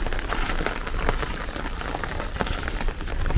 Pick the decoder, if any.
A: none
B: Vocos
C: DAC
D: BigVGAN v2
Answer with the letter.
A